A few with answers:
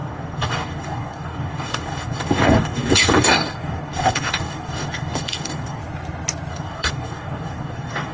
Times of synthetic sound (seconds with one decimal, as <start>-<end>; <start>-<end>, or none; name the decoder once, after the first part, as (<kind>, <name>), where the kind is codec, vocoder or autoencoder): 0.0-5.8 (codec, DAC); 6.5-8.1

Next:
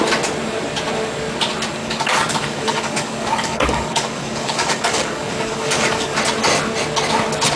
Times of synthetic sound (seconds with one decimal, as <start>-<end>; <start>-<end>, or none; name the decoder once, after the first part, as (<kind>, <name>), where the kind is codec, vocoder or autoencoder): 1.8-6.2 (codec, DAC)

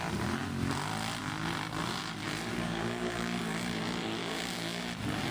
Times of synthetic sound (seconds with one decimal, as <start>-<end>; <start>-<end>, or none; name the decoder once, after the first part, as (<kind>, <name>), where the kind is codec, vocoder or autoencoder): 2.5-3.4 (codec, DAC); 4.2-4.8

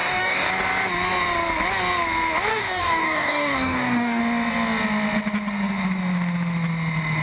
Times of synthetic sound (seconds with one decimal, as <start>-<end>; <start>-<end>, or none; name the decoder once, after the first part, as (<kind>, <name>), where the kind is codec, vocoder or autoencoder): 0.0-0.5 (codec, DAC); 2.5-4.2

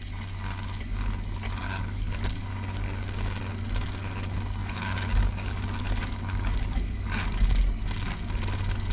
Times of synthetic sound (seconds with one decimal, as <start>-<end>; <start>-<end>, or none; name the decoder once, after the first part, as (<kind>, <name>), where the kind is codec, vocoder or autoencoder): 1.6-3.4 (codec, DAC); 4.6-7.2